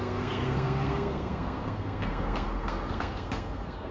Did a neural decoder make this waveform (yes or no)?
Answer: yes